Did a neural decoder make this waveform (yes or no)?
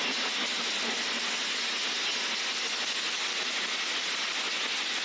no